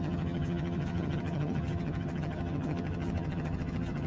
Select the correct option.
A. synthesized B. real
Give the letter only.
A